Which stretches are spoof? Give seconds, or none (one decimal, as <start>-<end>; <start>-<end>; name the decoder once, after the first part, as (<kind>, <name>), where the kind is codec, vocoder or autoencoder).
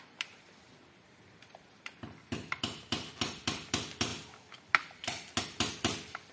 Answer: 0.0-4.1 (vocoder, BigVGAN v2); 5.4-6.3